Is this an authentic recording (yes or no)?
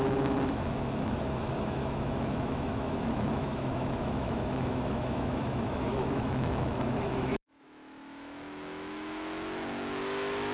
no